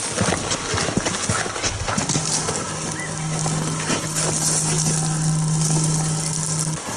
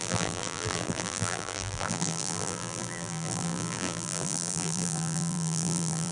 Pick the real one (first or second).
first